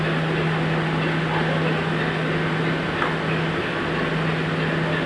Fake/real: real